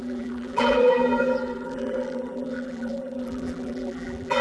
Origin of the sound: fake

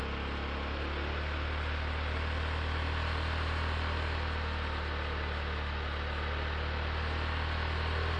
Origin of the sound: real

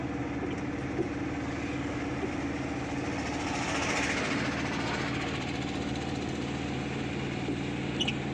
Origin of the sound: real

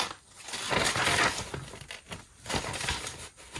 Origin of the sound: real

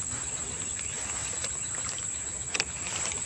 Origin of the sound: real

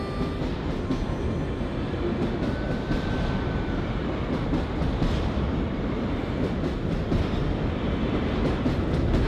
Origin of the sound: real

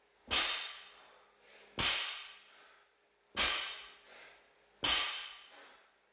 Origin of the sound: real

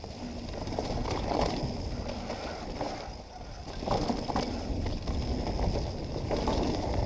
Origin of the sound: real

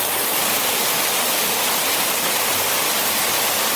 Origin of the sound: real